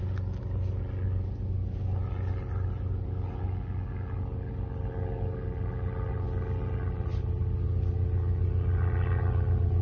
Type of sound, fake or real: real